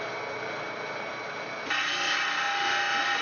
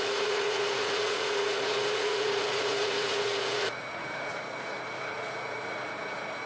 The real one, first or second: first